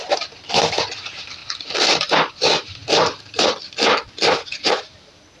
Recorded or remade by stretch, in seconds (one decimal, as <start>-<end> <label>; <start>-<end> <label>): 0.0-5.4 recorded